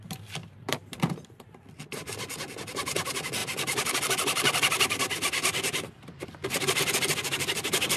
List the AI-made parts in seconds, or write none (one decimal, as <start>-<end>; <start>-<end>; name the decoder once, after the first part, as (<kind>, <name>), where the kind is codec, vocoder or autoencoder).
0.4-0.9 (vocoder, BigVGAN v2); 3.4-6.8